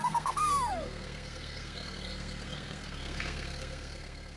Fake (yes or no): yes